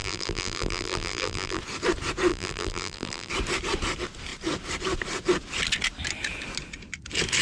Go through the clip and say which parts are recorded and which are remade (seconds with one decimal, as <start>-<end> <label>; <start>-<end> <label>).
0.0-1.6 remade; 1.6-2.3 recorded; 2.3-3.3 remade; 3.3-7.4 recorded